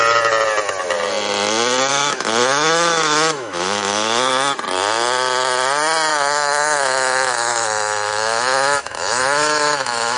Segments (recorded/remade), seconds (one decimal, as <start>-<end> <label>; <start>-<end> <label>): 0.0-1.9 recorded; 1.9-4.3 remade; 4.3-6.1 recorded; 6.1-10.2 remade